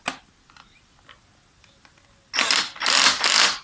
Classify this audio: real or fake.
real